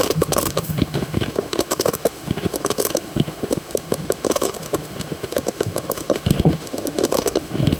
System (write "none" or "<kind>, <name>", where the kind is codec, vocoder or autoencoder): autoencoder, DAC-VAE